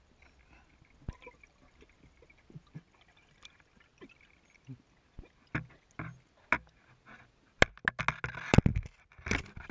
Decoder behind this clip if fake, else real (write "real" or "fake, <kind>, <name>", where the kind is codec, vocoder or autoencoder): real